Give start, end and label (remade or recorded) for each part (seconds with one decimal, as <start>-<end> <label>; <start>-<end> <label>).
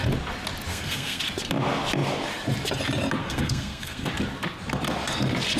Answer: 0.0-0.7 recorded; 0.7-1.2 remade; 1.2-3.2 recorded; 3.2-4.1 remade; 4.1-5.6 recorded